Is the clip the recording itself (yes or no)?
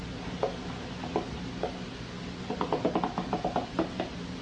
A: yes